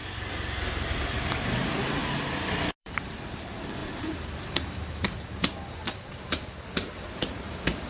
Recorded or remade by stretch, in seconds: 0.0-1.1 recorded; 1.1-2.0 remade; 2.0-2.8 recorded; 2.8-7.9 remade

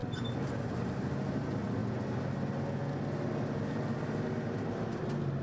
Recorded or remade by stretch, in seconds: 0.0-5.4 recorded

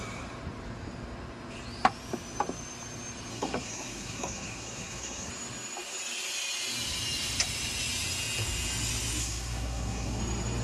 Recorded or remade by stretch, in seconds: 0.0-3.3 recorded; 3.3-5.3 remade; 5.3-9.2 recorded; 9.2-10.2 remade; 10.2-10.6 recorded

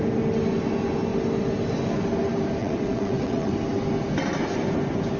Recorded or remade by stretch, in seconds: 0.0-2.6 recorded; 2.6-3.5 remade; 3.5-5.2 recorded